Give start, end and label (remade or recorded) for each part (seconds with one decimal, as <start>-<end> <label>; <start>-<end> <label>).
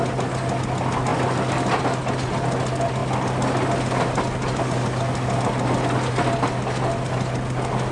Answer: 0.0-7.9 recorded